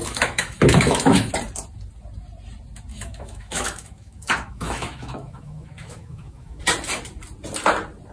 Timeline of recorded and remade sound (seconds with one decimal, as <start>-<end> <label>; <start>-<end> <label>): 0.0-1.3 remade; 1.3-2.9 recorded; 2.9-6.6 remade; 6.6-8.1 recorded